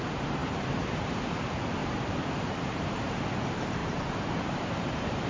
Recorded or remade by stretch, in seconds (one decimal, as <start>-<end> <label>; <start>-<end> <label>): 0.0-0.4 recorded; 0.4-1.4 remade; 1.4-1.8 recorded; 1.8-3.3 remade; 3.3-3.8 recorded; 3.8-5.3 remade